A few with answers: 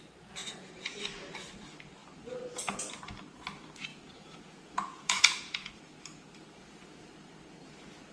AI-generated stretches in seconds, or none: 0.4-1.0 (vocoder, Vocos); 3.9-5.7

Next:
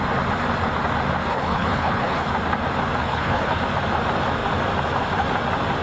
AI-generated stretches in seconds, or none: 1.3-2.3 (codec, HILCodec); 3.0-3.6

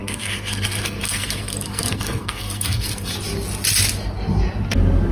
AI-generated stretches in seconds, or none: 0.0-3.1 (codec, SNAC)